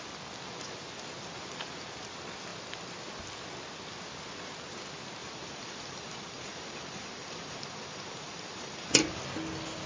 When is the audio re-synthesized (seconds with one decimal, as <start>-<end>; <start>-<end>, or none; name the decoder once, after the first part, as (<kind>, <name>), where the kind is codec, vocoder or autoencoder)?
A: 5.2-9.2 (vocoder, BigVGAN v2)